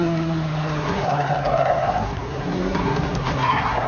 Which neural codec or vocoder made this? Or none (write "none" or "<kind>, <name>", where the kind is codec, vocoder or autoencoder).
codec, SNAC